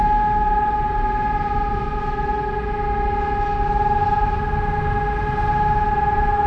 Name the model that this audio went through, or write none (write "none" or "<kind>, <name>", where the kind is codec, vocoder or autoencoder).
none